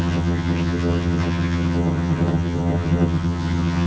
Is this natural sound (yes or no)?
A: no